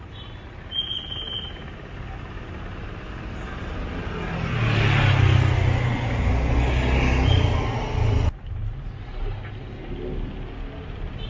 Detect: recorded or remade recorded